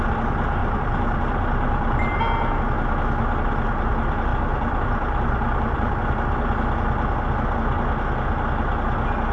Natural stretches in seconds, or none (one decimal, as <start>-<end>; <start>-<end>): 0.0-0.6; 2.6-4.3; 5.9-9.3